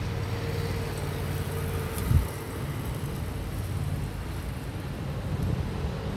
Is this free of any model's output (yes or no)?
yes